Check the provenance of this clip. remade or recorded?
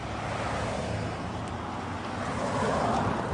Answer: recorded